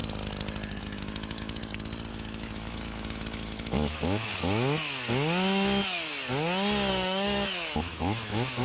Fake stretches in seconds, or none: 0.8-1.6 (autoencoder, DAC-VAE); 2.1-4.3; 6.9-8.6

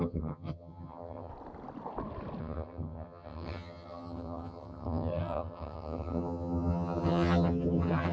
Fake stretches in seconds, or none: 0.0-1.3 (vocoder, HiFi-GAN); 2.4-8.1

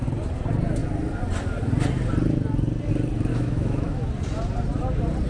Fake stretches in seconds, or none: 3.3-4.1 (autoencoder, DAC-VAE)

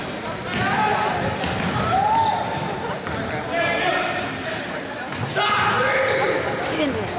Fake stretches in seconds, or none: 3.9-4.8 (vocoder, BigVGAN v2)

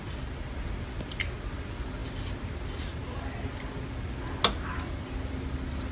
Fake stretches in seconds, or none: none

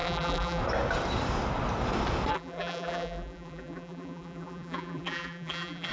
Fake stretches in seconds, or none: 0.0-0.6 (vocoder, BigVGAN v2); 2.3-5.9

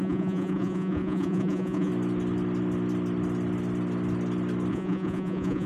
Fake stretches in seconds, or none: 0.0-1.9 (vocoder, Vocos); 4.7-5.7

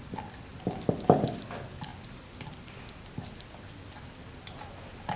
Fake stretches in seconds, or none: 0.0-0.5 (vocoder, BigVGAN v2); 1.4-1.9